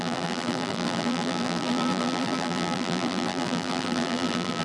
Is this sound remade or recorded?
remade